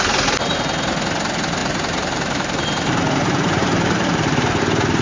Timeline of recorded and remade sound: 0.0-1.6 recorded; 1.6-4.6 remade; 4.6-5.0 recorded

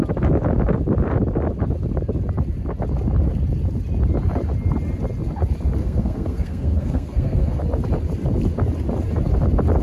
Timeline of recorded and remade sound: 0.0-5.8 recorded; 5.8-7.6 remade; 7.6-9.8 recorded

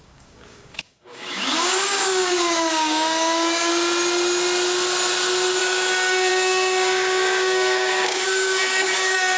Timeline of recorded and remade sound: 0.0-3.7 remade; 3.7-5.6 recorded; 5.6-9.4 remade